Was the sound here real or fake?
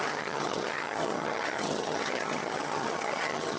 fake